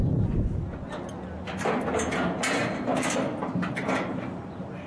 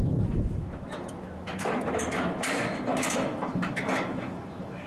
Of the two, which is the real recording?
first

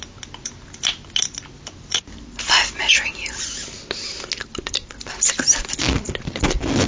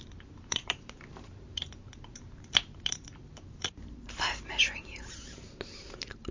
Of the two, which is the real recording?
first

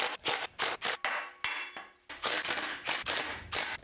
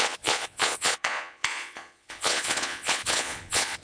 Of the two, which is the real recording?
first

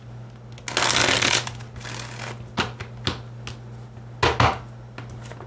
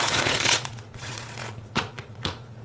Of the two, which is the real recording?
first